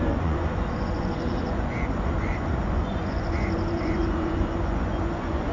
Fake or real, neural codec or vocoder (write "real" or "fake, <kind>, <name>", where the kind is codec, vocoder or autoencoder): fake, vocoder, Vocos